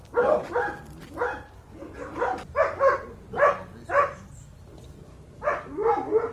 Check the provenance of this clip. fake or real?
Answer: real